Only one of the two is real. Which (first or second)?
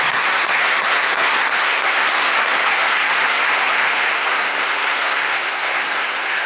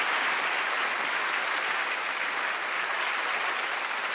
second